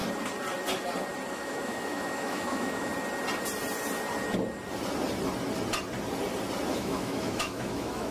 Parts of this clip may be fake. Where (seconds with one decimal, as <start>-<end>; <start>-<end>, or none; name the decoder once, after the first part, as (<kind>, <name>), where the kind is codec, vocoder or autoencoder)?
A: 1.3-2.9 (autoencoder, DAC-VAE); 6.7-8.1